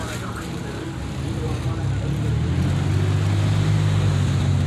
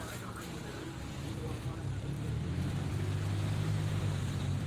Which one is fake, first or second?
second